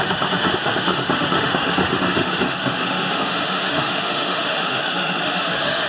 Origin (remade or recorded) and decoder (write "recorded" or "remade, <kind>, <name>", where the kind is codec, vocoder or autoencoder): remade, autoencoder, DAC-VAE